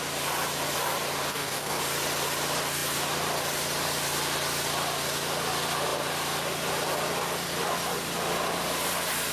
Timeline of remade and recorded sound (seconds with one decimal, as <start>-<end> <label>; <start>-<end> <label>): 0.0-1.3 recorded; 1.3-1.8 remade; 1.8-9.3 recorded